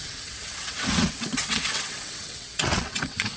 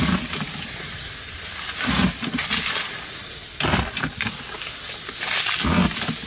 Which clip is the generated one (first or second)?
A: first